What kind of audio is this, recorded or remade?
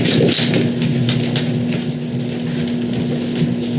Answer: recorded